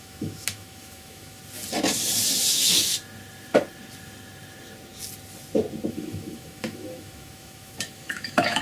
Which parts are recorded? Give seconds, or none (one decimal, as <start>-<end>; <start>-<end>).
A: 1.4-2.5; 2.9-5.9